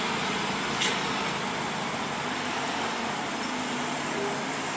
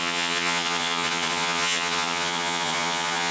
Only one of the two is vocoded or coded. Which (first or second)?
second